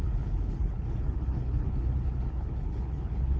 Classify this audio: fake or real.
fake